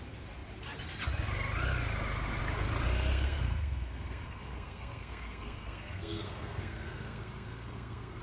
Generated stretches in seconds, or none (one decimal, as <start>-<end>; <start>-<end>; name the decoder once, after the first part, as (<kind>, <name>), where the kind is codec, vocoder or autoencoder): 3.1-8.2 (codec, SNAC)